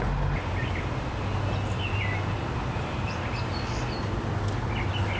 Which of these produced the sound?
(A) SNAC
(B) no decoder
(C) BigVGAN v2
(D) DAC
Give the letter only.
B